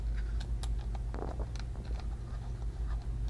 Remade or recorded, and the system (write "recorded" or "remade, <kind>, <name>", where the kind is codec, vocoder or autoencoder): recorded